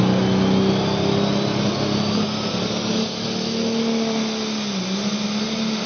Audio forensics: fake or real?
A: real